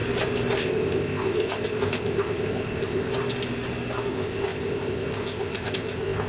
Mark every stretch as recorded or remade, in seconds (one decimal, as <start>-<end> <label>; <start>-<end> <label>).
0.0-0.6 recorded; 0.6-3.1 remade; 3.1-4.1 recorded; 4.1-6.3 remade